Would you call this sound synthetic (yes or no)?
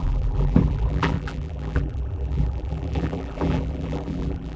yes